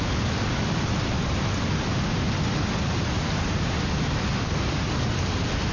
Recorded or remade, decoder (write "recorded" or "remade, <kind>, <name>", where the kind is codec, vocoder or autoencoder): recorded